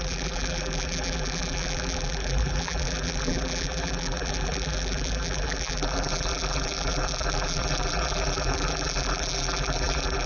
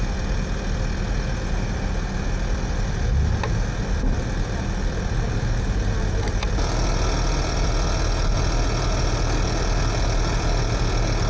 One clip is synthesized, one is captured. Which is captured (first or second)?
second